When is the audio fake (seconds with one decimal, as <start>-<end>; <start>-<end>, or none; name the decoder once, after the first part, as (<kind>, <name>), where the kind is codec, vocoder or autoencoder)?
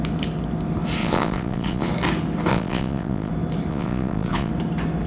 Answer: 1.0-1.9 (vocoder, Vocos); 2.5-3.3; 3.7-4.5